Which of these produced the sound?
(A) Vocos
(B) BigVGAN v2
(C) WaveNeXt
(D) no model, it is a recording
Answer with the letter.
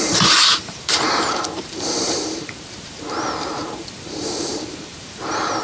B